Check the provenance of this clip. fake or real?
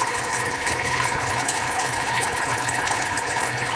fake